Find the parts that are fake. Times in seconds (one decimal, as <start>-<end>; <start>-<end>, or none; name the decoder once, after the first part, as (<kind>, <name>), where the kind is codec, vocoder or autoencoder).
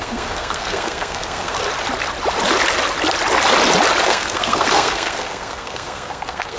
0.0-1.6 (codec, SNAC); 4.0-6.6